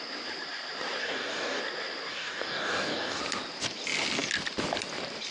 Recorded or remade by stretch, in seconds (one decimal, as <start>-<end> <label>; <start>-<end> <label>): 0.0-1.0 recorded; 1.0-1.6 remade; 1.6-2.1 recorded; 2.1-3.2 remade; 3.2-5.3 recorded